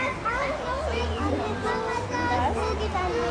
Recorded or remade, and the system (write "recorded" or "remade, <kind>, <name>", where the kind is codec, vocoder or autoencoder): recorded